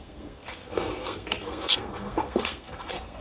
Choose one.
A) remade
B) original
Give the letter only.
A